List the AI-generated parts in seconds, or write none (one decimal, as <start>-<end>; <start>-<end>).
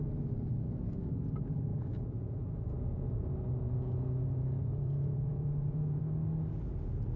1.7-6.0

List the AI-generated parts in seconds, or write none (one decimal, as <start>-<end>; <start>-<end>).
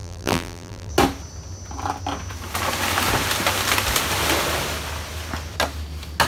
0.0-0.9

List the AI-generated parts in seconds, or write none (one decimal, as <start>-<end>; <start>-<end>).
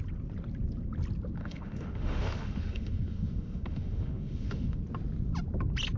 1.4-4.8